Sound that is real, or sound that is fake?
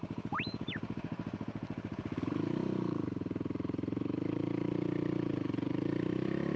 fake